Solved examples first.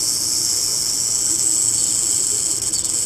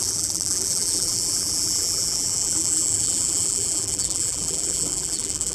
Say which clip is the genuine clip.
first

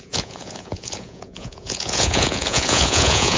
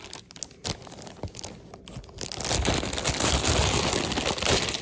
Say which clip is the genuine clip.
second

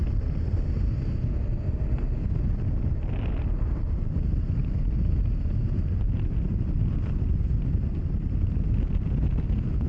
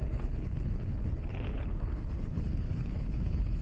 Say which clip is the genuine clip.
first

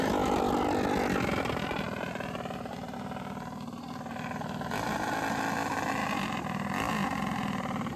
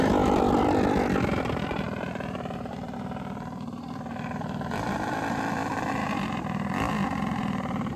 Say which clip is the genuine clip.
first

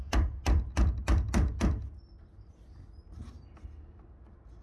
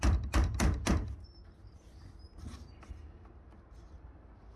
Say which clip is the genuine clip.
first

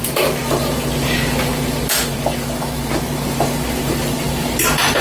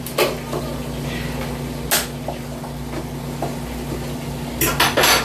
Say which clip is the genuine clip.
second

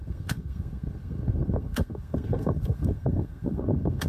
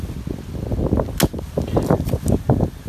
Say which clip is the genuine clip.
second